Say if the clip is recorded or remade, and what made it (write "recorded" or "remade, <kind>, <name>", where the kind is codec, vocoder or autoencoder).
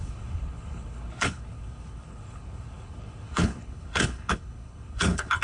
remade, codec, HILCodec